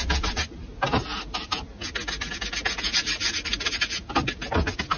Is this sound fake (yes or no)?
no